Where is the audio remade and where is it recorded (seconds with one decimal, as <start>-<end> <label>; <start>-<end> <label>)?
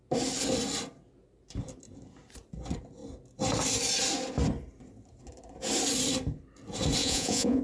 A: 0.0-7.0 recorded; 7.0-7.6 remade